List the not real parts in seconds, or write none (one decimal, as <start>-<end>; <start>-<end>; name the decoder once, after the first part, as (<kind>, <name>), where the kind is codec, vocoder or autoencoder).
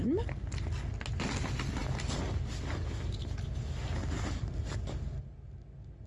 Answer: none